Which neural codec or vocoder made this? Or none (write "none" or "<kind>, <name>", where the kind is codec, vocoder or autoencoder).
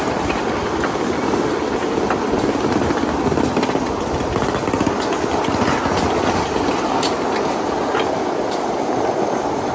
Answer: none